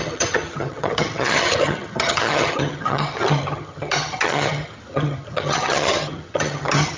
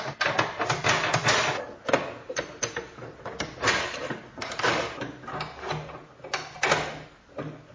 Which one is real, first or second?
second